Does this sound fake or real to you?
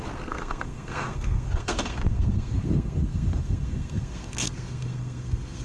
fake